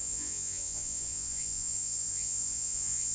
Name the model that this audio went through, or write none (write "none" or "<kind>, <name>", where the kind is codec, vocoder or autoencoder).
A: vocoder, Vocos